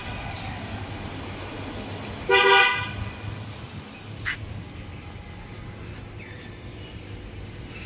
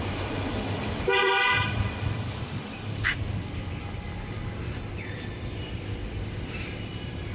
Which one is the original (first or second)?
first